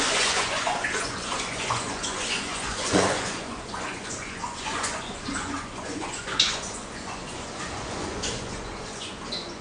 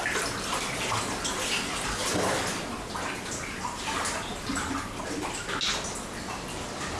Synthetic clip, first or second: first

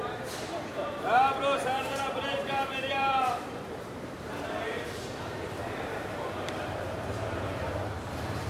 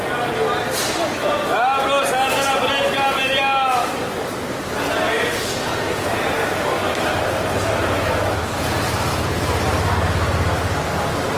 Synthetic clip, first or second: first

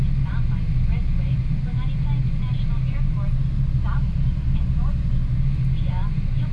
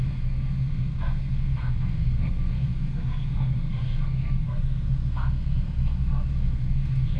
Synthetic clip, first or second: second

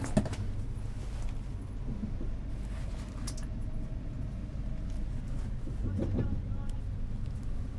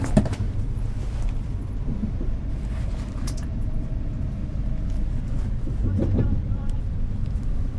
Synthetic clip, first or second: second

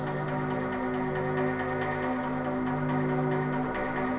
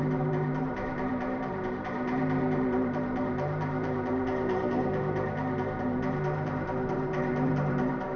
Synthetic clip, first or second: second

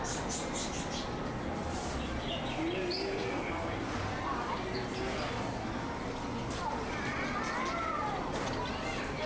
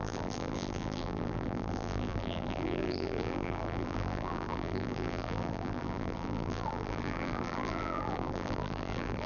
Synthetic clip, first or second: second